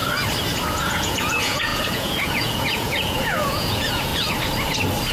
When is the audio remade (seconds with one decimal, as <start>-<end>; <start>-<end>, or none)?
0.7-4.1